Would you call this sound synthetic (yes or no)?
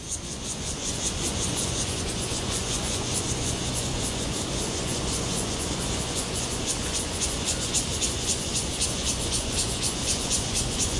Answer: yes